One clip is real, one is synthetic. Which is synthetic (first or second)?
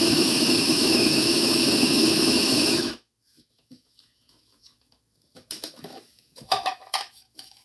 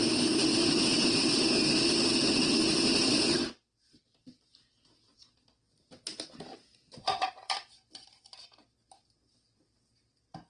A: first